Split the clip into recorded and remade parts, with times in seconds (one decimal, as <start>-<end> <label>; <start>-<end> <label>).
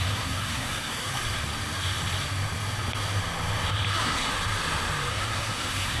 0.0-1.1 remade; 1.1-3.9 recorded; 3.9-4.3 remade; 4.3-5.1 recorded; 5.1-6.0 remade